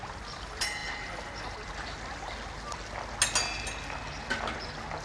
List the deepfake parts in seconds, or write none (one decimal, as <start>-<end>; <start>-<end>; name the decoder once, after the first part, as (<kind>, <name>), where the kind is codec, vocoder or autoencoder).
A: none